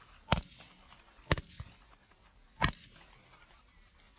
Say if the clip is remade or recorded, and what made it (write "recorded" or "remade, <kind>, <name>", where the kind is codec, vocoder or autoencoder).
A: recorded